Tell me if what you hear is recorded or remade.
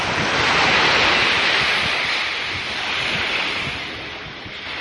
recorded